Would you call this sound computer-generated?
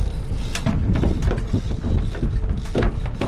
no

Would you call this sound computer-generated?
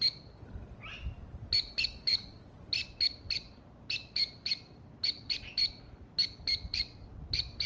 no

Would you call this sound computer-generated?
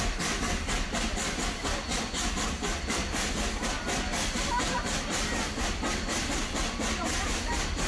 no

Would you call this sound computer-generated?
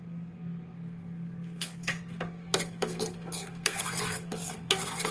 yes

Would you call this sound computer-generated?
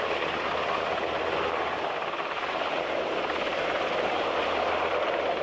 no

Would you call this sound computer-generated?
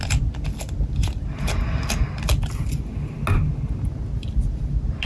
no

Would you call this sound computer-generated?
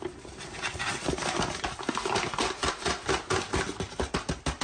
no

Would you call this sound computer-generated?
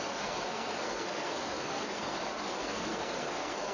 yes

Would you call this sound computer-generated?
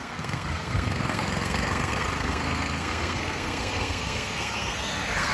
yes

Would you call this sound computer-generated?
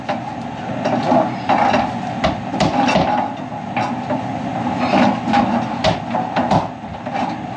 no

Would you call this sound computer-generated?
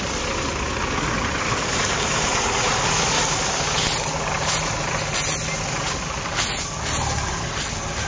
no